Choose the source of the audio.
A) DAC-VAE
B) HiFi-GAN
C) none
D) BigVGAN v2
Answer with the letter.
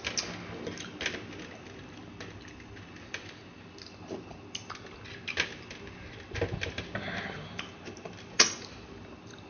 C